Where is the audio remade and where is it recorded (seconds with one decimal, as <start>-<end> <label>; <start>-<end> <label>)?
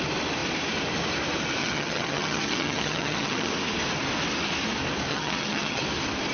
0.0-1.6 recorded; 1.6-3.5 remade; 3.5-5.1 recorded; 5.1-5.8 remade; 5.8-6.3 recorded